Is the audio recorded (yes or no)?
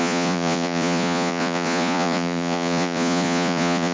no